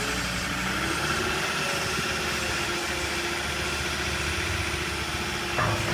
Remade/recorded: recorded